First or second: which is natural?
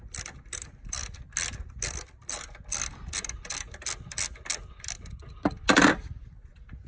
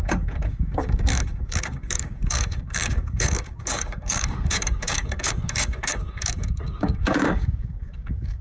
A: first